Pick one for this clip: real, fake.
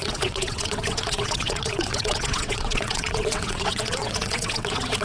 fake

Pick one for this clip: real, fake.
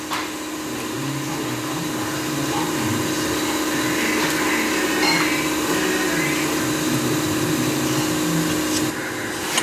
real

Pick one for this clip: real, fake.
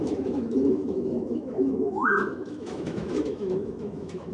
fake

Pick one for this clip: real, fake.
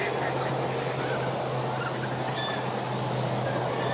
real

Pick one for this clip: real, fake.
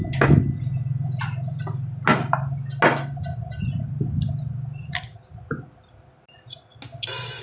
real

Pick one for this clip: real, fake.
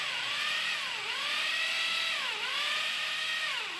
real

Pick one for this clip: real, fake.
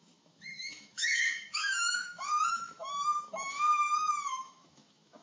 fake